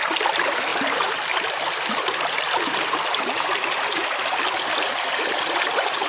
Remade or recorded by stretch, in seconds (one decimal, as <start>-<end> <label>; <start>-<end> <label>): 0.0-6.1 recorded